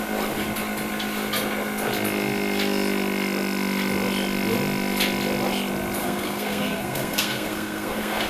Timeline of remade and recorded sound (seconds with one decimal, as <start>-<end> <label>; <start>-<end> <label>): 0.0-6.0 recorded; 6.0-8.3 remade